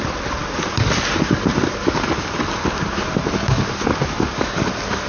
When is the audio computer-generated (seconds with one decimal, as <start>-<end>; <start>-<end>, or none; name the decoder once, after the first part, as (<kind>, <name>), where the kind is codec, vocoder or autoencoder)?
none